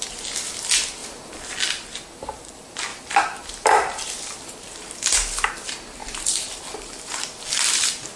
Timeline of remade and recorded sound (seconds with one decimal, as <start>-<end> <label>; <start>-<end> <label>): 0.0-1.0 recorded; 1.0-1.7 remade; 1.7-2.9 recorded; 2.9-4.2 remade; 4.2-6.0 recorded; 6.0-8.2 remade